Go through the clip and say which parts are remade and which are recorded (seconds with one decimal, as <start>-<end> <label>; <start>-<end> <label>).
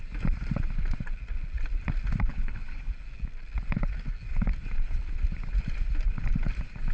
0.0-2.3 recorded; 2.3-2.9 remade; 2.9-6.9 recorded